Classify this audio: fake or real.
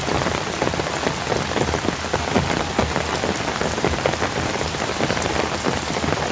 real